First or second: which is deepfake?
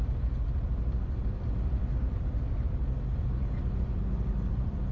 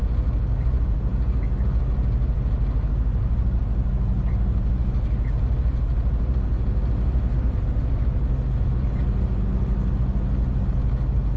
first